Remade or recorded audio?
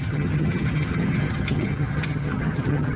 remade